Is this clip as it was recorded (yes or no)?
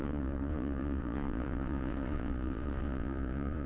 no